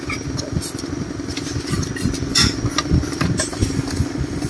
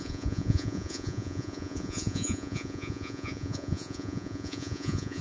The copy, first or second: second